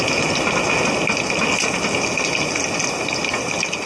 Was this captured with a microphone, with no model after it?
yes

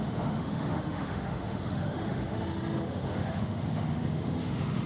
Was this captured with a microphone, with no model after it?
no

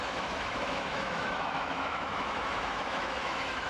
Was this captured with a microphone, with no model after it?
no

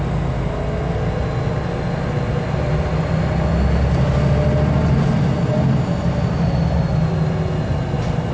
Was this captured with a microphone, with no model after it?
yes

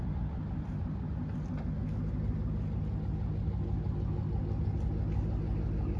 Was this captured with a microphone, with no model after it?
yes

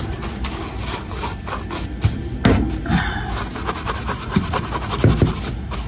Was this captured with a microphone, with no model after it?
yes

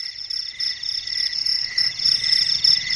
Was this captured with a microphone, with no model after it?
yes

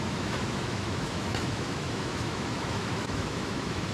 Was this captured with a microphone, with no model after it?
no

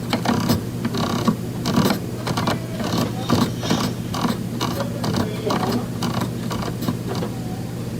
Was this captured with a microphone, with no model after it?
yes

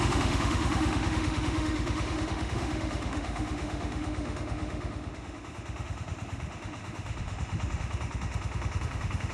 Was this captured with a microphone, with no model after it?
no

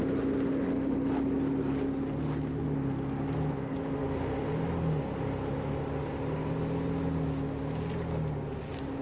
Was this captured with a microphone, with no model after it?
yes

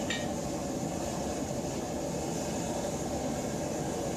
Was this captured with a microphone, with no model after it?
yes